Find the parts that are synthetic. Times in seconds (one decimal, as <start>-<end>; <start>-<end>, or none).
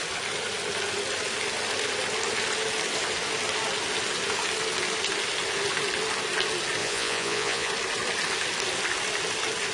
6.8-7.7